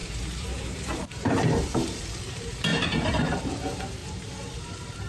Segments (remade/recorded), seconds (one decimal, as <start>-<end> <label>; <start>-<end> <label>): 0.0-5.1 remade